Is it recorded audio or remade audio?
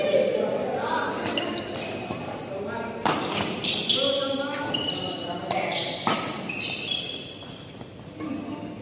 recorded